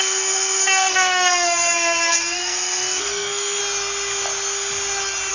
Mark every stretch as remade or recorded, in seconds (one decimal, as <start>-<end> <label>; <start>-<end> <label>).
0.0-3.6 remade; 3.6-5.3 recorded